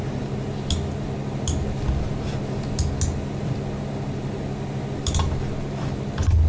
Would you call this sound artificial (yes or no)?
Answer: no